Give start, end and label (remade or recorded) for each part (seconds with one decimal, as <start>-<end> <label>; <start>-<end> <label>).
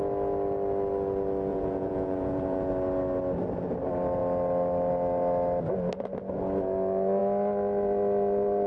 0.0-1.5 recorded; 1.5-2.7 remade; 2.7-8.7 recorded